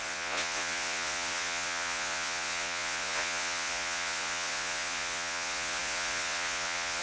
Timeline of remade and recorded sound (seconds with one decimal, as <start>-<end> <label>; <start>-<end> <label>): 0.0-7.0 remade